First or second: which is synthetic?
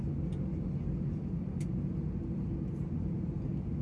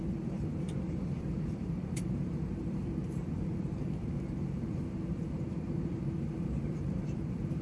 second